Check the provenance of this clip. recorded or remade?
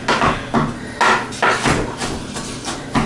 recorded